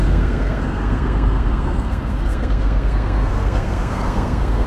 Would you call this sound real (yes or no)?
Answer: no